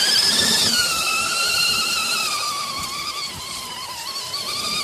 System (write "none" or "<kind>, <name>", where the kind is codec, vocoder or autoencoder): vocoder, BigVGAN v2